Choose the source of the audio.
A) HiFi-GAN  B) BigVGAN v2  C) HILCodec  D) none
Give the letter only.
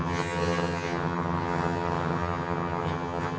A